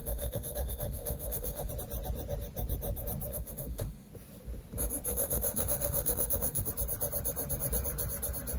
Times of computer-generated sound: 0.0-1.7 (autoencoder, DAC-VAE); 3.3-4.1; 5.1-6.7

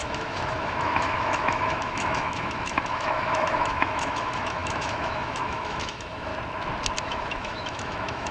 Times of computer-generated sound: 0.0-6.3 (autoencoder, DAC-VAE); 7.0-8.3

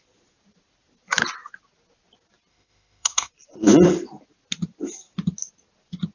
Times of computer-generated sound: 2.5-3.3 (autoencoder, DAC-VAE)

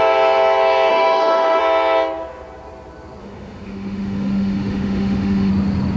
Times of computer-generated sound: 0.9-1.6 (autoencoder, DAC-VAE); 3.2-5.5

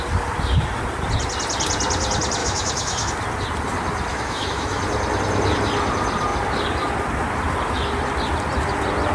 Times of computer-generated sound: 2.4-3.1 (autoencoder, DAC-VAE); 4.1-4.8